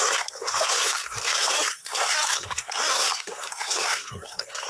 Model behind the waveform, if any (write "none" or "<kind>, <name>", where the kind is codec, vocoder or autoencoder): codec, SNAC